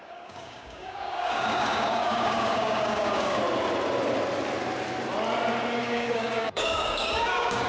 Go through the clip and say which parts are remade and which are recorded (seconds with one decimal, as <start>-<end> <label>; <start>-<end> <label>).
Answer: 0.0-3.4 remade; 3.4-5.8 recorded; 5.8-7.7 remade